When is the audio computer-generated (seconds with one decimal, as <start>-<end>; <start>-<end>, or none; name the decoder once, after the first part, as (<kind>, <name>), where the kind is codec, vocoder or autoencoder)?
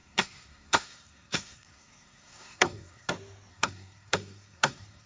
0.0-3.1 (codec, SNAC); 3.5-5.1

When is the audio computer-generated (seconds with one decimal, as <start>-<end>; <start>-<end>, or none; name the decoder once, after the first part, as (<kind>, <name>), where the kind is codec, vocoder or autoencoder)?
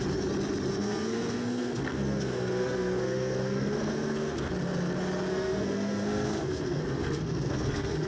0.7-4.5 (codec, SNAC); 5.3-8.1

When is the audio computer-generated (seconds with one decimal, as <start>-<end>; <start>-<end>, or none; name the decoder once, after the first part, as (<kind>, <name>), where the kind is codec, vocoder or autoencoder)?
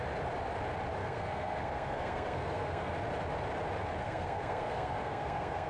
1.0-2.9 (codec, SNAC); 4.0-5.7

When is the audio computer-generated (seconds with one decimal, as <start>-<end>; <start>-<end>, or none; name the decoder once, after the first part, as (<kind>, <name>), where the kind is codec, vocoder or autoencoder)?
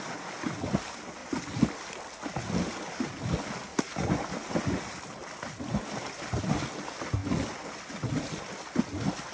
none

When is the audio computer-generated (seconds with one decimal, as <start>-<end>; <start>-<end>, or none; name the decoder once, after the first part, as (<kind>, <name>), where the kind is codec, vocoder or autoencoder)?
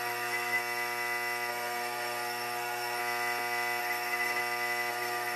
0.0-0.6 (codec, SNAC); 1.5-3.0; 3.8-4.4; 4.9-5.4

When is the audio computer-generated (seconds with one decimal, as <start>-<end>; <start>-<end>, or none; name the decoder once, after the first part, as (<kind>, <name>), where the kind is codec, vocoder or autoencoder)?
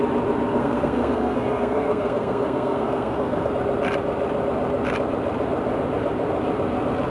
0.6-3.5 (codec, SNAC)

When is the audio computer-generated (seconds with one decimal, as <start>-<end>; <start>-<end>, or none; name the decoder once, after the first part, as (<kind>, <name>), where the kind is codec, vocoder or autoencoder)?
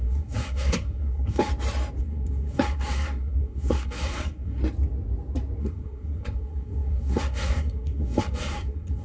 0.0-1.5 (codec, SNAC); 2.0-4.6; 5.6-9.0